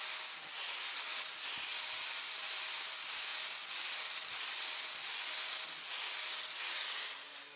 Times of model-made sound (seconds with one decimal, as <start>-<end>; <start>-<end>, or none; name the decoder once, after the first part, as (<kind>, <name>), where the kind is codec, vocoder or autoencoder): none